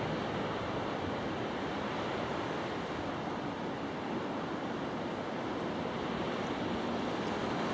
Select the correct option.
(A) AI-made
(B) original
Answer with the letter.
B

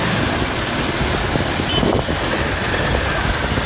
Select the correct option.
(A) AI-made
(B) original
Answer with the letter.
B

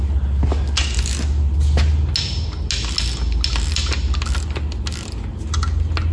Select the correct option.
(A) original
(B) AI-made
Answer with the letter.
A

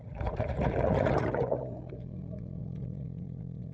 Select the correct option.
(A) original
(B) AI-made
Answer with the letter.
B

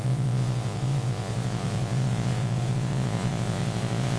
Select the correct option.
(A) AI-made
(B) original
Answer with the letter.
A